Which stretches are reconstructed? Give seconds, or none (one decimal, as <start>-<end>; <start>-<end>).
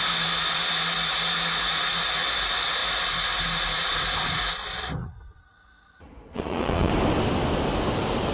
5.0-6.9